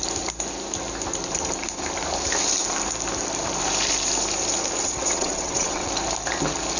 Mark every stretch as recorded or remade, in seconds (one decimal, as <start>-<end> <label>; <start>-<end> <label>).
0.0-4.8 recorded; 4.8-5.9 remade; 5.9-6.8 recorded